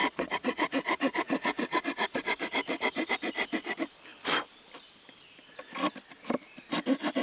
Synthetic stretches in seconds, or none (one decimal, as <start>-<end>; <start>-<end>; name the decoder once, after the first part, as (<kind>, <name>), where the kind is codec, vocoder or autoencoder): 0.0-1.8 (vocoder, Vocos)

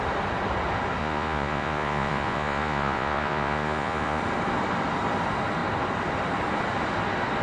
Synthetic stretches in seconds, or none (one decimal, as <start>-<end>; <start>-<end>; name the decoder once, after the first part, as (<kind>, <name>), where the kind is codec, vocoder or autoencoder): 1.0-4.2 (vocoder, Vocos)

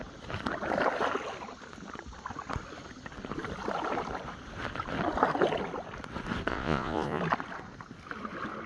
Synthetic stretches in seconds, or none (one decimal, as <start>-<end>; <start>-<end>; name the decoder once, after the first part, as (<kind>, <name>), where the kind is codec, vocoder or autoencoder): 6.5-7.2 (vocoder, Vocos)

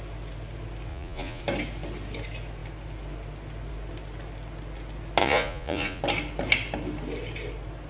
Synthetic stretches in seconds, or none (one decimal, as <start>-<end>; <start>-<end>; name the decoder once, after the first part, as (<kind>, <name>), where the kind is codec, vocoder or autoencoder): 0.9-1.4 (vocoder, Vocos); 5.2-6.0

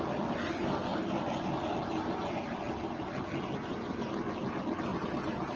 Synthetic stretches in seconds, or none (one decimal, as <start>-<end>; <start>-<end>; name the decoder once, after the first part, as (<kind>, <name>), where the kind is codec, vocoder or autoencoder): none

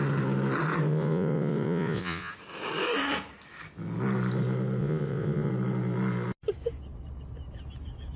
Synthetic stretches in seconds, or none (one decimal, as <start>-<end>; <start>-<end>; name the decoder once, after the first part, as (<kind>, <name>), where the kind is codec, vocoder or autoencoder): 0.9-2.3 (vocoder, Vocos); 4.8-5.5

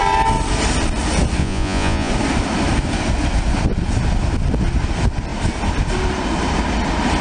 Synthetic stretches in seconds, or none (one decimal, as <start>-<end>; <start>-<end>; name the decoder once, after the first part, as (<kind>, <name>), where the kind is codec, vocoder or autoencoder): 1.4-2.1 (vocoder, Vocos)

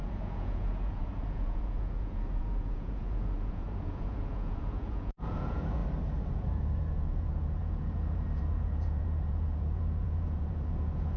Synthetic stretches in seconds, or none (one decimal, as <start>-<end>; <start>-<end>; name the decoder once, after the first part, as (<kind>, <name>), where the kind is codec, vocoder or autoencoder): 0.0-5.8 (vocoder, Vocos); 6.3-11.2